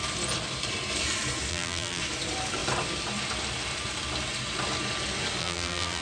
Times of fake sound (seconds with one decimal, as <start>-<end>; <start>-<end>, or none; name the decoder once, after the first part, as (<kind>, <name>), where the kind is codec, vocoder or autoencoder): 1.5-2.0 (vocoder, BigVGAN v2); 5.4-6.0